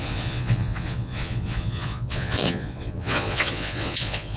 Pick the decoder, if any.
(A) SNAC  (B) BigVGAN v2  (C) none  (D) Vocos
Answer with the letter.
D